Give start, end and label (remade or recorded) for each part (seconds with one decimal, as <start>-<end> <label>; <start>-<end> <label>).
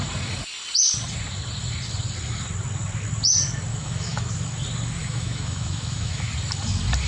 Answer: 0.0-3.7 recorded; 3.7-4.3 remade; 4.3-5.0 recorded; 5.0-6.3 remade; 6.3-7.1 recorded